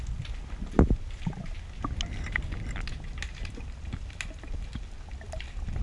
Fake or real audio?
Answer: real